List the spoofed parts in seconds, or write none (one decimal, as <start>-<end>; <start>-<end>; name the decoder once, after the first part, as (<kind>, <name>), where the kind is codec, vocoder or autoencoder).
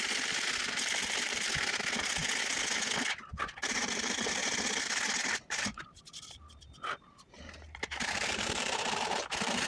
0.0-1.5 (vocoder, BigVGAN v2); 3.7-4.4; 7.0-9.7